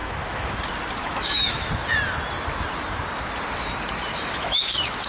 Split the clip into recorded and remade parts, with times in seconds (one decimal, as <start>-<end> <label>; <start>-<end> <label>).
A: 0.0-0.6 remade; 0.6-1.0 recorded; 1.0-1.7 remade; 1.7-4.1 recorded; 4.1-5.1 remade